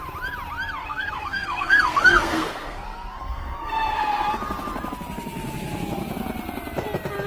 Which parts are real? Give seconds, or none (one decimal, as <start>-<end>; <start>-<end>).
0.0-0.8; 4.3-7.3